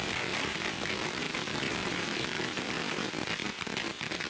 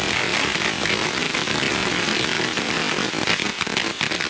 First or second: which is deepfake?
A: first